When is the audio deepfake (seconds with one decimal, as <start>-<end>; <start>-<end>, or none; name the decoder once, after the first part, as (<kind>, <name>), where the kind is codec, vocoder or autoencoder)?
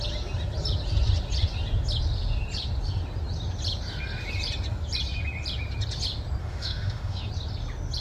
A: 6.4-7.3 (autoencoder, DAC-VAE)